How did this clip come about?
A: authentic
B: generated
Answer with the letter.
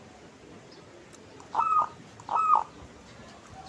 A